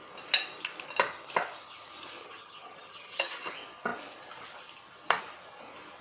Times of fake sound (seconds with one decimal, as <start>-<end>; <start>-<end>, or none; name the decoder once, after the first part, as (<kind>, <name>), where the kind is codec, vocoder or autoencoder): 2.2-3.5 (vocoder, HiFi-GAN)